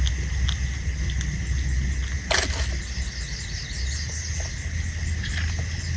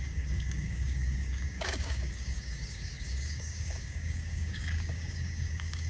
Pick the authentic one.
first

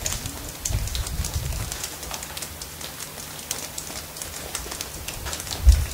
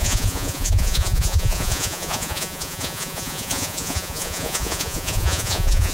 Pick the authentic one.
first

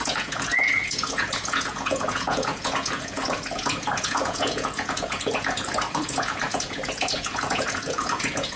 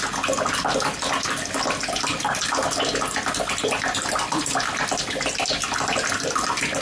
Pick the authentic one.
second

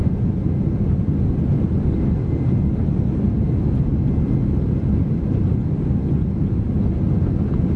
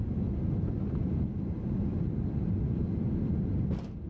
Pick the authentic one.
first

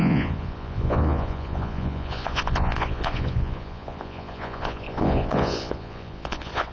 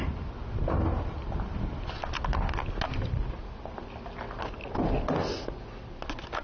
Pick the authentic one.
second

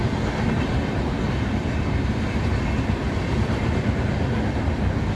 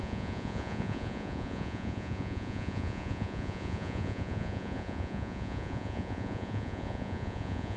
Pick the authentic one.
first